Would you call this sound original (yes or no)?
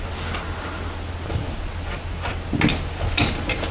yes